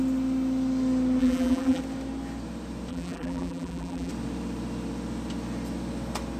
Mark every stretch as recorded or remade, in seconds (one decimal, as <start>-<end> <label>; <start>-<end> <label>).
0.0-1.2 recorded; 1.2-1.8 remade; 1.8-2.9 recorded; 2.9-4.1 remade; 4.1-6.4 recorded

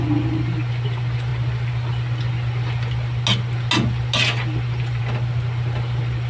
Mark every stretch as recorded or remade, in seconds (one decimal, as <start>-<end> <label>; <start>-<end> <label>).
0.0-6.3 recorded